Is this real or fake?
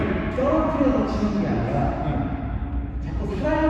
real